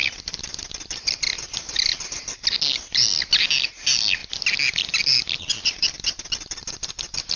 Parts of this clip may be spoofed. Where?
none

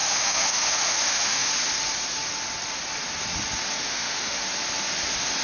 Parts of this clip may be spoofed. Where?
0.0-1.5 (autoencoder, DAC-VAE); 3.8-4.4

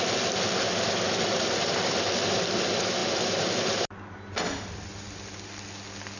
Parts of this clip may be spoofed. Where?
3.0-3.8 (vocoder, BigVGAN v2)

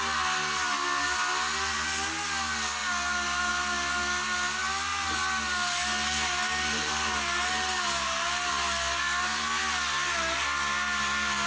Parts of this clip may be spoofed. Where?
none

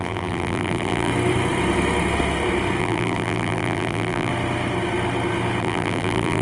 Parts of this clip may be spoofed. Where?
0.0-1.1 (vocoder, BigVGAN v2); 2.8-4.3; 5.6-6.4